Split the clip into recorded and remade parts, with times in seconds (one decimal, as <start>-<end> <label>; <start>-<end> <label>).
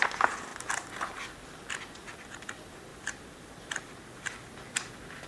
0.0-2.9 recorded; 2.9-4.5 remade; 4.5-5.3 recorded